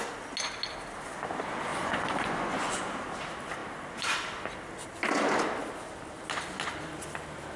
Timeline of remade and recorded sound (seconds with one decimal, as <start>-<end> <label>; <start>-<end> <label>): 0.0-1.7 recorded; 1.7-2.8 remade; 2.8-7.6 recorded